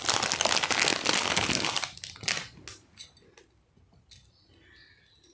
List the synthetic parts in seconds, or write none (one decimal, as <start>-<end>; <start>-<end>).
none

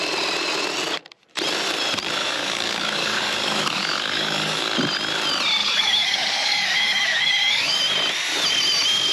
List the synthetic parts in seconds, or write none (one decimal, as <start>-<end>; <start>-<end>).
2.2-4.6; 5.6-7.8